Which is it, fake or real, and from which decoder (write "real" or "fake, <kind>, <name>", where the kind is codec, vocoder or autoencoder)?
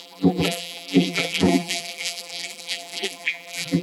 fake, vocoder, BigVGAN v2